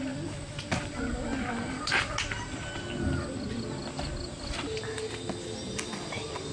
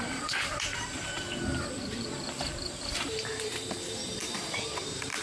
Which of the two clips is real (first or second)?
first